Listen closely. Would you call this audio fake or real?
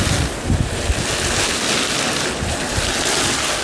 real